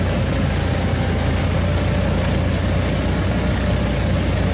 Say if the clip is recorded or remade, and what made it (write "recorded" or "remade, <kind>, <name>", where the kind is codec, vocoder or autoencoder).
recorded